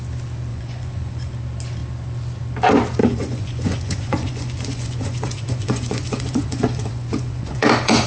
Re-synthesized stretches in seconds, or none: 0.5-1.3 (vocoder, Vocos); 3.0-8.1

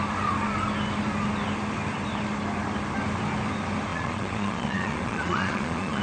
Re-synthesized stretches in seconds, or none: 3.9-6.0 (vocoder, Vocos)

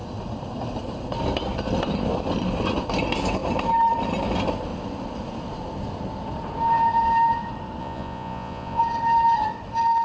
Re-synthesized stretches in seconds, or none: 7.8-8.8 (vocoder, Vocos)

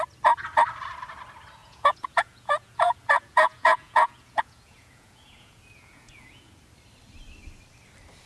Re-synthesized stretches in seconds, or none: 1.6-6.5 (vocoder, Vocos)

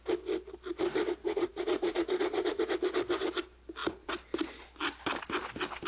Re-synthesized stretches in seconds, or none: 1.2-2.6 (vocoder, Vocos)